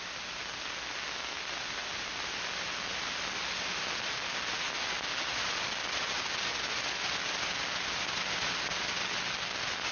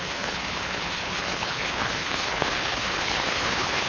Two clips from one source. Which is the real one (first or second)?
first